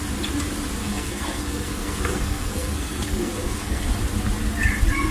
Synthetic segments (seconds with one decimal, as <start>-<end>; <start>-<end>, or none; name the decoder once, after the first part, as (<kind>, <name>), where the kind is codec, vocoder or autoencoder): 0.8-3.9 (codec, SNAC)